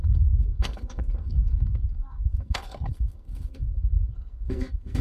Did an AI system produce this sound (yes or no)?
yes